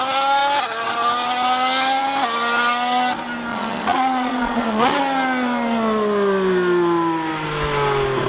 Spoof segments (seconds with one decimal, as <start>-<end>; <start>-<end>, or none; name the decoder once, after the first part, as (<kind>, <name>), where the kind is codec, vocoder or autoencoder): 3.5-5.0 (vocoder, Vocos)